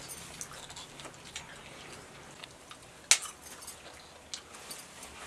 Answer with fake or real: real